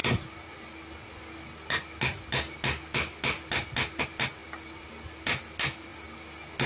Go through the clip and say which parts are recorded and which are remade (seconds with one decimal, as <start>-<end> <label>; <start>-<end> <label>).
0.0-6.7 recorded